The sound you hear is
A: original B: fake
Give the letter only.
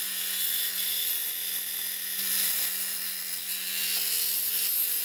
A